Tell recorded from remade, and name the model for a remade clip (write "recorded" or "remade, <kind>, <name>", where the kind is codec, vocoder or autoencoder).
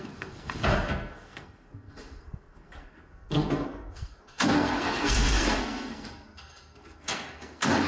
remade, codec, SNAC